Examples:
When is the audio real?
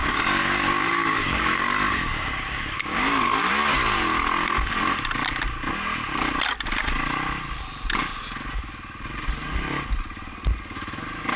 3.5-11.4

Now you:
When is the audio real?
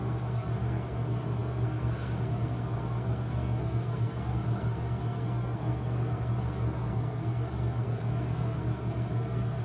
none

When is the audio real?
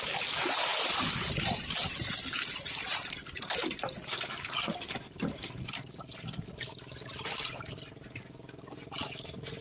0.0-9.6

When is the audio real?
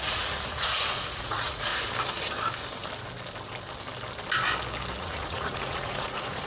1.7-5.0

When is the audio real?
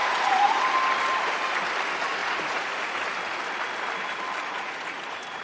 0.7-2.2; 3.0-4.4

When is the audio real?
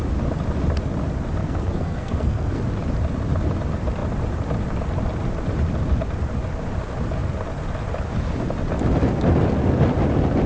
0.0-1.4; 2.6-10.5